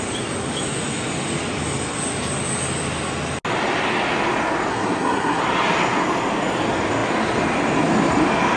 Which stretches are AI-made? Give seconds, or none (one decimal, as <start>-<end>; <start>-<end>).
4.7-5.4